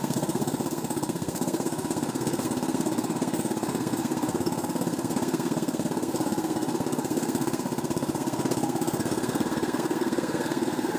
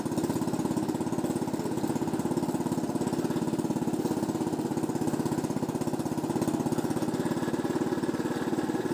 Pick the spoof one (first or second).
first